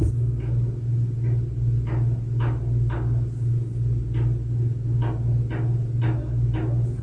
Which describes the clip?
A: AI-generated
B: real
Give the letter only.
B